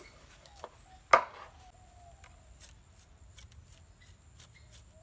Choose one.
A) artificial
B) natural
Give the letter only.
B